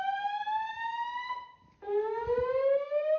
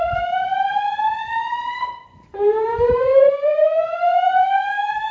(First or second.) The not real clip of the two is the second